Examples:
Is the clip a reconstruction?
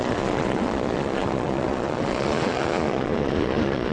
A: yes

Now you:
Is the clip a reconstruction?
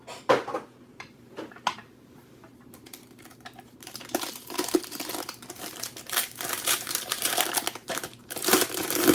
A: yes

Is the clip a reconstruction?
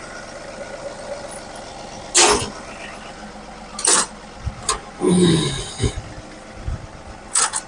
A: no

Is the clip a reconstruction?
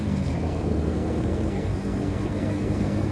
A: yes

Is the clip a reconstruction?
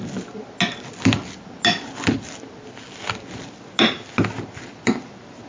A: no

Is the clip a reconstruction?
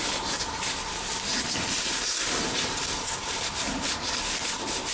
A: no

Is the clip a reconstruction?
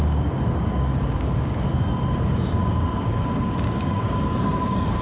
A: yes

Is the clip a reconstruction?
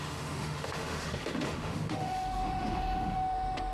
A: yes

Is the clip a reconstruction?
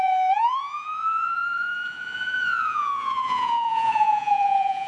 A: yes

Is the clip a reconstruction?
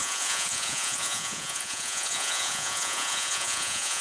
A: yes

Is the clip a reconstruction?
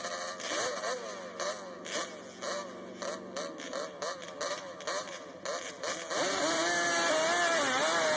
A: no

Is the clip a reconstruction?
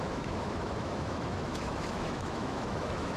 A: yes